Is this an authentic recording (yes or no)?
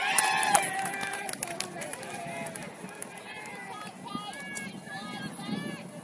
yes